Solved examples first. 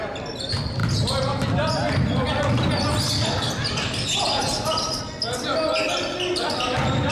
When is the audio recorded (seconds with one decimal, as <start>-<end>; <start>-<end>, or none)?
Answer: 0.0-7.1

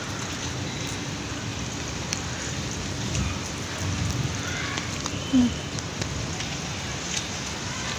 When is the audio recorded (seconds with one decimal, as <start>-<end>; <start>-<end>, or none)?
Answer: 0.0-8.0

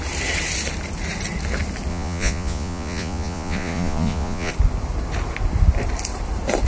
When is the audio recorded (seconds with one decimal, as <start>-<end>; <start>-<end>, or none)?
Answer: 0.0-1.9; 4.5-6.7

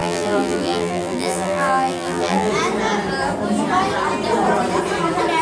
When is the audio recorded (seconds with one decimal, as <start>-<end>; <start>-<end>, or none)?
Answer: 2.5-5.4

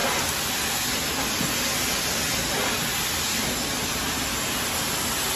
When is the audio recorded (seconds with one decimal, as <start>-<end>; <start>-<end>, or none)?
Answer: 0.0-5.4

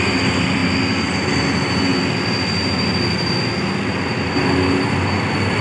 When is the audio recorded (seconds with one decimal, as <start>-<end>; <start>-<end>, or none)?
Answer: 0.0-5.6